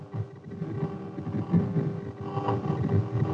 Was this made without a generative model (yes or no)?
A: yes